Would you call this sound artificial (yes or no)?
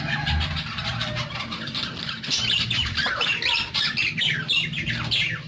yes